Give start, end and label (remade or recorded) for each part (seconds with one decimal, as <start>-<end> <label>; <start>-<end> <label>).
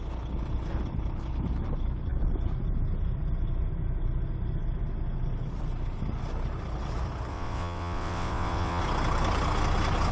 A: 0.0-7.3 recorded; 7.3-8.8 remade; 8.8-10.1 recorded